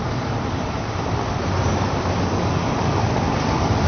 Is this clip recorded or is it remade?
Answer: recorded